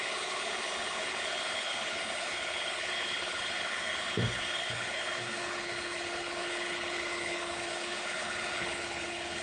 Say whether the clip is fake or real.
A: fake